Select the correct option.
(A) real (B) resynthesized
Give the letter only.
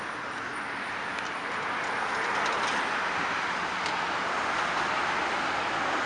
A